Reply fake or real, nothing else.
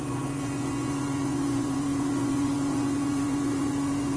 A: fake